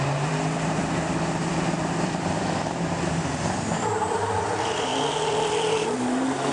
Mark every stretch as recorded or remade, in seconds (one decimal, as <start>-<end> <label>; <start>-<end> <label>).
0.0-0.8 remade; 0.8-2.7 recorded; 2.7-4.9 remade; 4.9-5.7 recorded; 5.7-6.5 remade